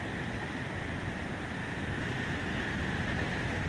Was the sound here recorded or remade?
recorded